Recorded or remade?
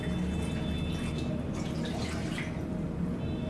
recorded